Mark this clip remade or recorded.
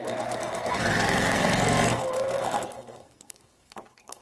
remade